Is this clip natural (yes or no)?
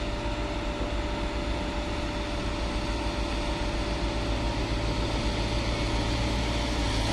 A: yes